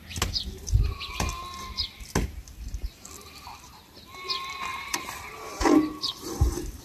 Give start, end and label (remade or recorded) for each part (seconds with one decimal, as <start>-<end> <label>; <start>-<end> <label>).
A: 0.0-4.7 recorded; 4.7-6.8 remade